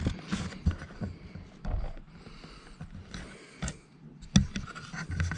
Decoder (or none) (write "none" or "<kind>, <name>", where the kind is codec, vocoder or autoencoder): none